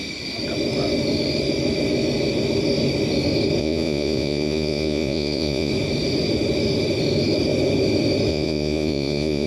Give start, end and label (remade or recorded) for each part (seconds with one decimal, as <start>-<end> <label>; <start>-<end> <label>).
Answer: 0.0-3.6 recorded; 3.6-5.7 remade; 5.7-8.3 recorded; 8.3-9.5 remade